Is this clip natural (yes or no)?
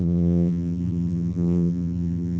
no